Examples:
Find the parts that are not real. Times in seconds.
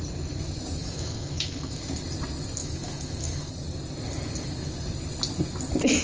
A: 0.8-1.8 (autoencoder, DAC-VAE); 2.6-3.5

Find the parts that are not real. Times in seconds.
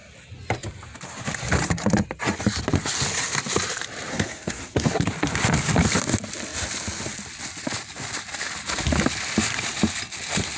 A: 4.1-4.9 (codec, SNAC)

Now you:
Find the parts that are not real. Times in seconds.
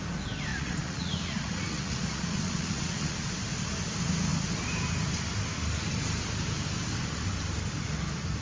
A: 0.5-3.3 (vocoder, Vocos)